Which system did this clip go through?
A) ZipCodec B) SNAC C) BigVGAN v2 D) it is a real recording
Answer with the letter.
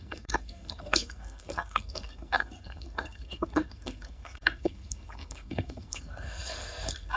B